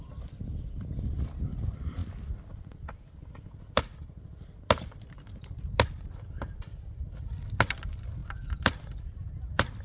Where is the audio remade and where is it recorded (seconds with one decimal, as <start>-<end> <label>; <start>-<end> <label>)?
0.0-8.2 recorded; 8.2-9.0 remade; 9.0-9.8 recorded